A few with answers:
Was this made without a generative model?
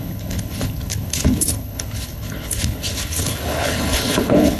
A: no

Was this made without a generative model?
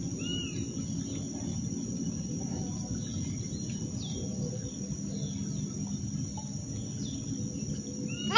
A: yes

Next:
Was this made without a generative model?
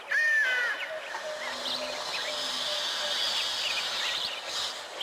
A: yes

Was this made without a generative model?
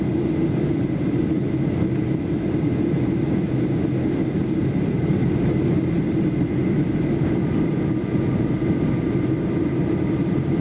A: yes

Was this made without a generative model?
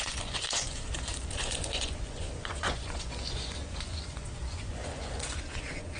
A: no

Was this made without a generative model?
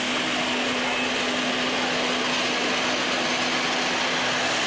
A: yes